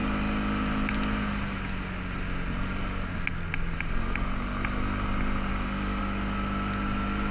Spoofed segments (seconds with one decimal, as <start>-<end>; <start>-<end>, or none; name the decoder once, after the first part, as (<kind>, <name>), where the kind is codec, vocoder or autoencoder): 5.5-6.0 (codec, DAC)